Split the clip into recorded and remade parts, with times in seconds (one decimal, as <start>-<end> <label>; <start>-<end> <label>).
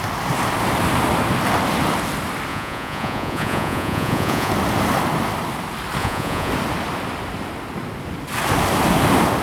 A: 0.0-2.5 recorded; 2.5-4.5 remade; 4.5-6.0 recorded; 6.0-6.5 remade; 6.5-9.4 recorded